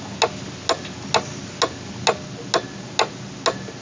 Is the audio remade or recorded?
recorded